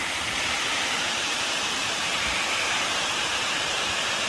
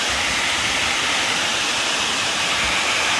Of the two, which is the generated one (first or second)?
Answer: first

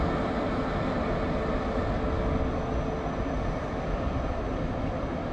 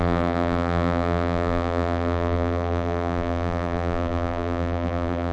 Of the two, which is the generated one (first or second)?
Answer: second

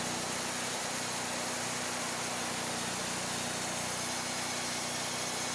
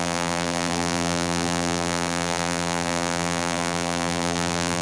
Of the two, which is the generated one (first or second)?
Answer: second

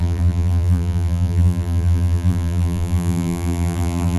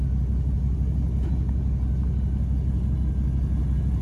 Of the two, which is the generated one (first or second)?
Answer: first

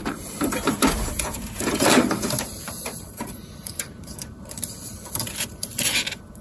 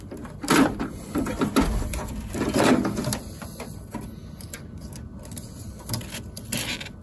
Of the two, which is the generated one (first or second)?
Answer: first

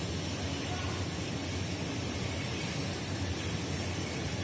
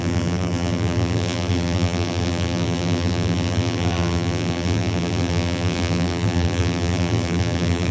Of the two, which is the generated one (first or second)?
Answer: second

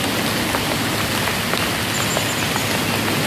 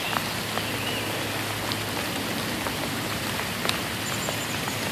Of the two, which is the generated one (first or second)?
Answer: second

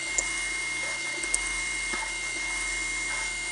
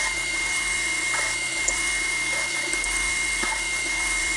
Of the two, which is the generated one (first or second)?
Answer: second